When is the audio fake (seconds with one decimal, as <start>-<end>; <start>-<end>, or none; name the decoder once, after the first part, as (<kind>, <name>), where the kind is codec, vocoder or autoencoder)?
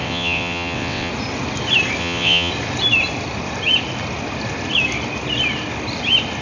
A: 0.0-1.1 (vocoder, WaveNeXt); 2.0-2.5